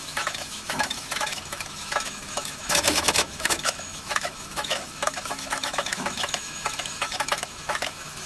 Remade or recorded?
remade